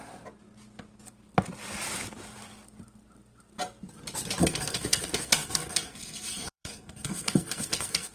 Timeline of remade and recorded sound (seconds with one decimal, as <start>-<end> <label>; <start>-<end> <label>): 0.0-4.4 recorded; 4.4-8.1 remade